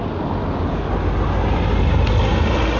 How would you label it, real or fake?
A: real